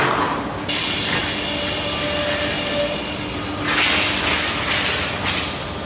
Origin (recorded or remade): recorded